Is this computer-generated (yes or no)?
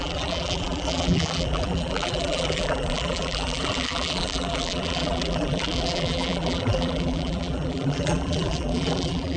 yes